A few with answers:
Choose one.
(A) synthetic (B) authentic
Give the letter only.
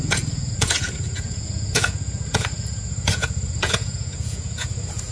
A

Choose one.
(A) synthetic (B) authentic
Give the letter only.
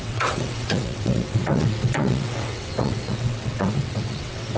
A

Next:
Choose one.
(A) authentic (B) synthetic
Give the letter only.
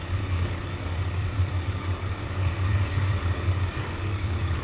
B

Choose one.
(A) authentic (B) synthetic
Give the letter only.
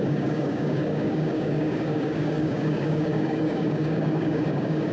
B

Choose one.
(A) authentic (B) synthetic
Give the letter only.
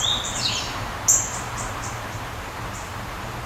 B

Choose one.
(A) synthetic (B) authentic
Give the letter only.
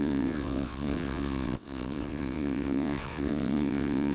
A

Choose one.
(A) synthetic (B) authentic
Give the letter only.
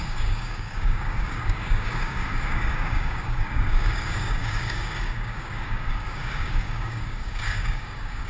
A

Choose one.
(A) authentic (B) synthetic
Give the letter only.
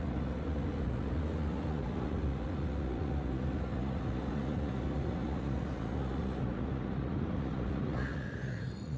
B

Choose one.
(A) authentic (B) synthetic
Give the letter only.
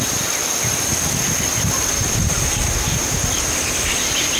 A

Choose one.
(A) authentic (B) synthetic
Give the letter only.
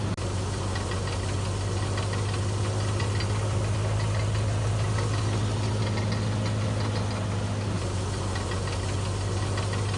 A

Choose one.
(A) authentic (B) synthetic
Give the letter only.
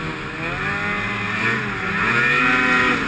A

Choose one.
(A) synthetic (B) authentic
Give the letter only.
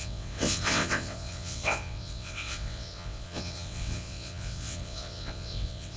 A